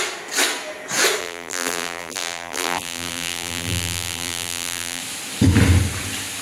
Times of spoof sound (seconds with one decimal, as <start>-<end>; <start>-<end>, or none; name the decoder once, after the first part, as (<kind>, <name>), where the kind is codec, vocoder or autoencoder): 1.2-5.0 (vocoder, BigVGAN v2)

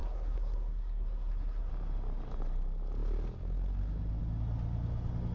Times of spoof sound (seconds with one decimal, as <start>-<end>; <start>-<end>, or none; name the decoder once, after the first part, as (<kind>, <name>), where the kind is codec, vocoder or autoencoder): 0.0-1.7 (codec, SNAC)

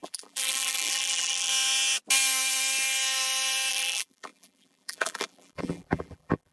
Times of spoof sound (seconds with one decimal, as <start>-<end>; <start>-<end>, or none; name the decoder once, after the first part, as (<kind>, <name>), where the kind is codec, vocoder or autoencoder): 0.0-1.5 (vocoder, BigVGAN v2); 3.7-6.5

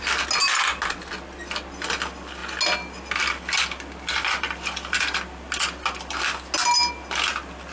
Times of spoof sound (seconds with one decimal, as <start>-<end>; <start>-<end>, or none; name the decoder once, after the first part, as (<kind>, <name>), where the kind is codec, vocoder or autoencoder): none

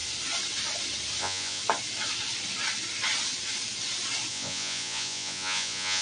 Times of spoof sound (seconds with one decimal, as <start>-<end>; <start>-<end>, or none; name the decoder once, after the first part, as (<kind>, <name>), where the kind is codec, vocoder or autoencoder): 1.2-1.6 (vocoder, Vocos); 4.3-6.0